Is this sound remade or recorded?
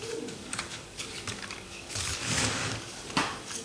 remade